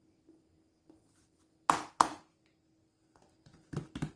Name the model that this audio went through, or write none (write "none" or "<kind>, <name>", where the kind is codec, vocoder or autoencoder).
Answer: none